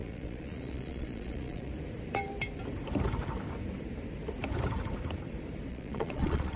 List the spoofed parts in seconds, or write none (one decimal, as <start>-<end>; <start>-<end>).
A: 0.0-1.7; 5.7-6.6